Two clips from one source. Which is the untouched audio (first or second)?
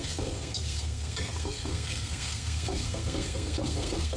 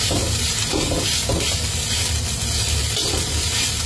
second